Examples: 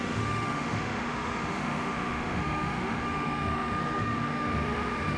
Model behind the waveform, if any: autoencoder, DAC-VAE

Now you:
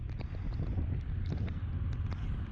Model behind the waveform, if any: none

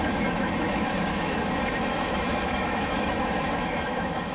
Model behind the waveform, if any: autoencoder, DAC-VAE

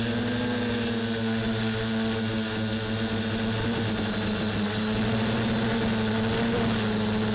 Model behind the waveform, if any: none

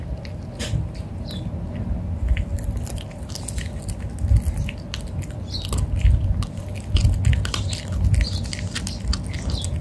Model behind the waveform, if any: none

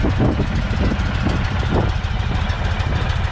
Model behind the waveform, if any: none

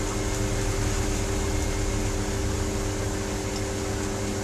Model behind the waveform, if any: none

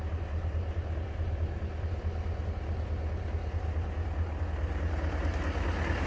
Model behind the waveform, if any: none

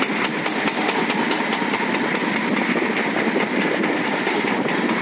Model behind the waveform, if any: none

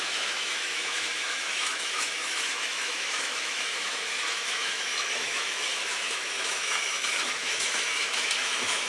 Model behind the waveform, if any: autoencoder, DAC-VAE